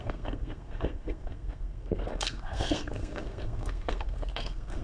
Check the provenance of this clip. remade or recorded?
remade